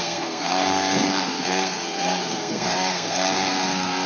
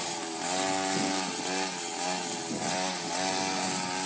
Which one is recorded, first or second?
second